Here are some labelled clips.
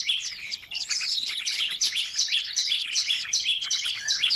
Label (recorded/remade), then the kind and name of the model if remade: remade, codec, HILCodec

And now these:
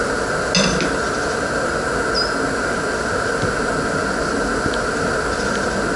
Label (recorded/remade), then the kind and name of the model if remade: recorded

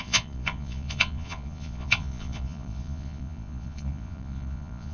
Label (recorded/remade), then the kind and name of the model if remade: remade, vocoder, Vocos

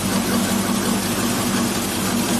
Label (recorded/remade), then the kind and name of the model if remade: recorded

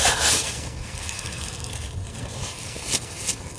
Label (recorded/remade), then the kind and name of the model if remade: remade, codec, SNAC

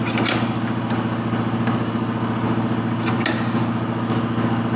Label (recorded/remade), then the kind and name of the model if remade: recorded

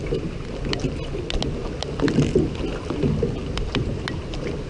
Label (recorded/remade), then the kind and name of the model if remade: recorded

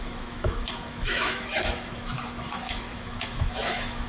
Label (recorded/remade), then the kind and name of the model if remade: remade, autoencoder, DAC-VAE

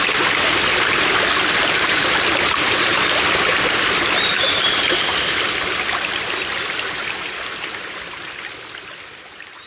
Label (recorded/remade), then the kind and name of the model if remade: remade, vocoder, BigVGAN v2